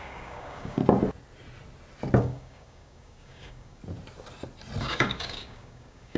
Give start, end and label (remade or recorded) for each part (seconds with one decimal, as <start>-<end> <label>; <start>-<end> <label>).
0.0-0.8 remade; 0.8-2.2 recorded; 2.2-3.8 remade; 3.8-4.8 recorded; 4.8-6.2 remade